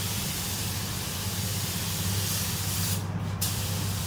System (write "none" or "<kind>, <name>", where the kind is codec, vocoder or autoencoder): vocoder, BigVGAN v2